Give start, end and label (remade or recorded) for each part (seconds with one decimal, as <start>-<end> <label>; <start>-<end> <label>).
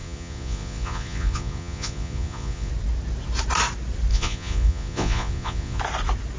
0.0-2.7 remade; 2.7-4.1 recorded; 4.1-5.8 remade; 5.8-6.4 recorded